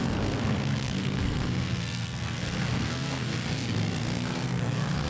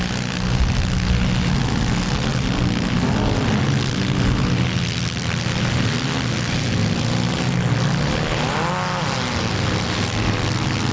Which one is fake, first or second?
first